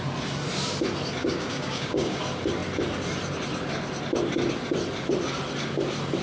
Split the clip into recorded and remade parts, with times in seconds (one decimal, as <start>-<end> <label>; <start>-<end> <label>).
0.0-1.2 recorded; 1.2-2.2 remade; 2.2-6.2 recorded